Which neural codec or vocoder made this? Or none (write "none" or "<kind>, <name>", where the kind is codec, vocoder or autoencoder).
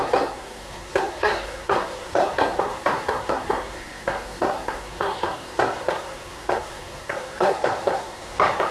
codec, SNAC